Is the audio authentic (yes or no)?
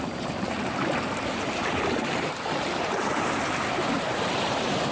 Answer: no